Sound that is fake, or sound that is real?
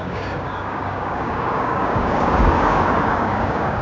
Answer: fake